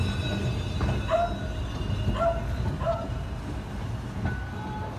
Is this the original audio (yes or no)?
yes